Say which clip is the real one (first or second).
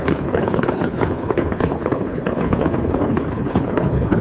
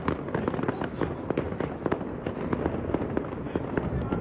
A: second